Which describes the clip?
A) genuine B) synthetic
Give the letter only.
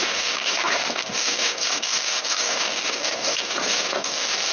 B